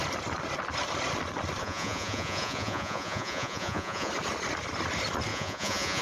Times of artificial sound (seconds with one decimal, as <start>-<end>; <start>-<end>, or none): 1.6-4.1; 5.3-6.0